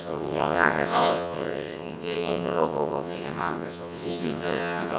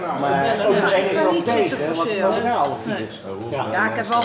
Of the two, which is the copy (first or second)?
first